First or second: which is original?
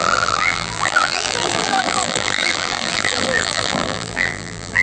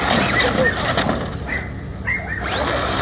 second